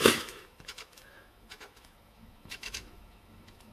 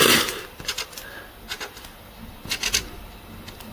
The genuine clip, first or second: second